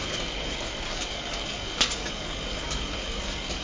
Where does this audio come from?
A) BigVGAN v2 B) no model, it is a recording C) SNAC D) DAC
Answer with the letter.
D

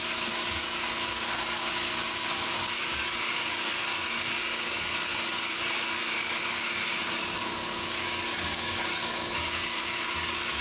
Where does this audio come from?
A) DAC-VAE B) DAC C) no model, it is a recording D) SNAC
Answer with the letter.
B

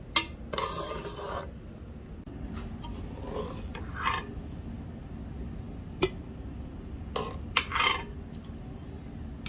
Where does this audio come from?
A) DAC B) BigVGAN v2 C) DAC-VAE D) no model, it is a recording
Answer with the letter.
D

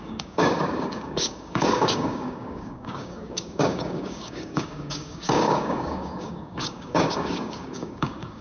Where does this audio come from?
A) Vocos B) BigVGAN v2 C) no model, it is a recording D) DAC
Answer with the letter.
D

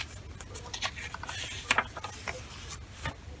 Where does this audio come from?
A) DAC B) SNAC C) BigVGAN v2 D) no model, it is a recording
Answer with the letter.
D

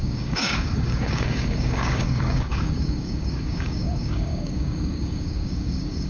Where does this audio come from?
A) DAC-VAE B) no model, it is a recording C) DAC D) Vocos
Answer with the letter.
C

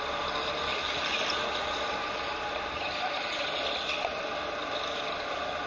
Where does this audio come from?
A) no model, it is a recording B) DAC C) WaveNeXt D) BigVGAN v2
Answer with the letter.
A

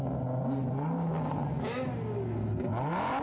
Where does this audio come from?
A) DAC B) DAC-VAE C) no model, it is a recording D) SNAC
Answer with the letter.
C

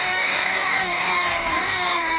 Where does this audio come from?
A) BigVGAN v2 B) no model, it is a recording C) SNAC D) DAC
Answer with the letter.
D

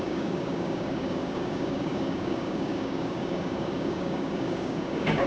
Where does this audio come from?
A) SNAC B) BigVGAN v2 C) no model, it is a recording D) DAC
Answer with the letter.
D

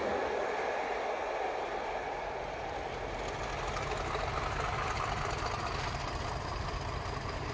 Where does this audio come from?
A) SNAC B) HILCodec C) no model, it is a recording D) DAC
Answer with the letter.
C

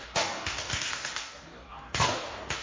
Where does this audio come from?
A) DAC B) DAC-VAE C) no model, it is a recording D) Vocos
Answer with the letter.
A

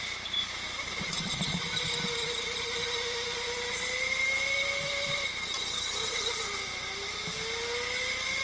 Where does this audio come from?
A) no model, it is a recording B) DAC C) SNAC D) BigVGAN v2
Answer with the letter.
A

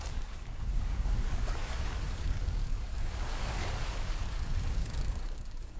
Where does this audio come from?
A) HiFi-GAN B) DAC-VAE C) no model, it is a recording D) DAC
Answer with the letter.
D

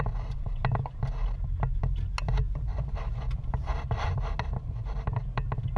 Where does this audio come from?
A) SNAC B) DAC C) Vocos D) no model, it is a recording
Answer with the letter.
D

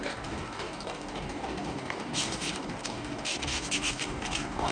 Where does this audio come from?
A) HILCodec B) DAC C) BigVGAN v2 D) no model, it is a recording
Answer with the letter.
B